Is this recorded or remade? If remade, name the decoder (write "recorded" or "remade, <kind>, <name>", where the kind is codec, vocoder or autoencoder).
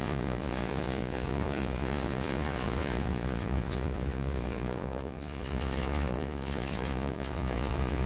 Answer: remade, vocoder, Vocos